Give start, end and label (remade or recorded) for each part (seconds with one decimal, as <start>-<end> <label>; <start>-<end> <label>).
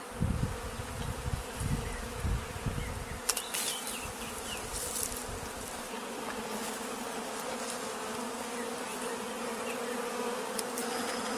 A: 0.0-11.4 recorded